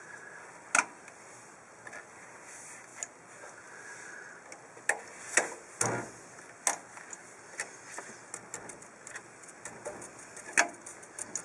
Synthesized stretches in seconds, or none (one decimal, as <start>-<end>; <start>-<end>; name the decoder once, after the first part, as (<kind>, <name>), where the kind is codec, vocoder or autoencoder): none